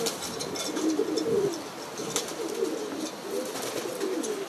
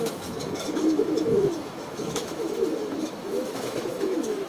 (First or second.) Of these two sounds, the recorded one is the first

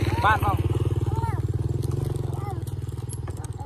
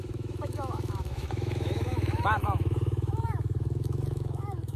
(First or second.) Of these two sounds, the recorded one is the first